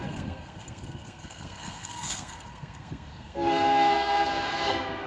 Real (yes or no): no